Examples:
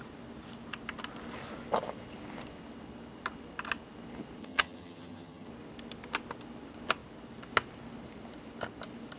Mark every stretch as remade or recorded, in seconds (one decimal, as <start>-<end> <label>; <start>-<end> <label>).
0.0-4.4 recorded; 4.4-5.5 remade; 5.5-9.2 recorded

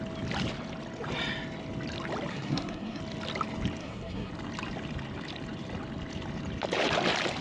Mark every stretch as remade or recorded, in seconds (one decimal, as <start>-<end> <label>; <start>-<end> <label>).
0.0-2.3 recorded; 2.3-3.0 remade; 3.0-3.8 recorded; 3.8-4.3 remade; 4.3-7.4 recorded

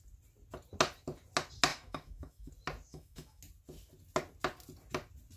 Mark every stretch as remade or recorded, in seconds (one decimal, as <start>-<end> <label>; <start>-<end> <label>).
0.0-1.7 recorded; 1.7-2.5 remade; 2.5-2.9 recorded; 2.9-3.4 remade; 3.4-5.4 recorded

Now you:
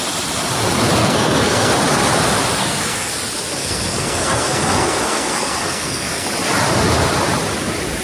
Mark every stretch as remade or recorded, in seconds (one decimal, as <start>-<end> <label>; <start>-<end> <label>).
0.0-1.0 recorded; 1.0-1.7 remade; 1.7-2.6 recorded; 2.6-3.1 remade; 3.1-3.6 recorded; 3.6-6.3 remade; 6.3-8.0 recorded

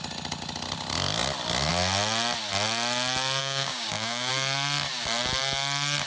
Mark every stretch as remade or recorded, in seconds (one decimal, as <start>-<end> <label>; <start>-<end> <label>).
0.0-3.4 recorded; 3.4-4.3 remade; 4.3-6.1 recorded